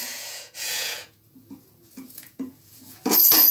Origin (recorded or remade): remade